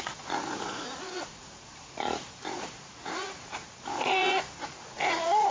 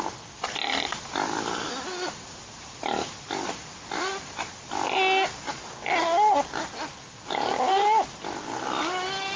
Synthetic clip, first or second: first